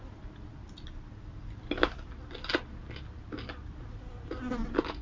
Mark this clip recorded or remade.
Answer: recorded